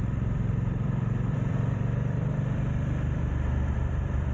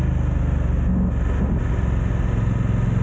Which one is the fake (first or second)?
first